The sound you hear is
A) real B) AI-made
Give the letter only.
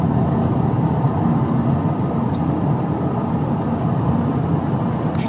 A